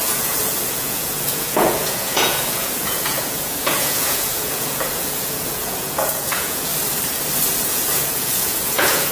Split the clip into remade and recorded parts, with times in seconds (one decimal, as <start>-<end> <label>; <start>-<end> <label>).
0.0-6.7 remade; 6.7-7.6 recorded; 7.6-9.1 remade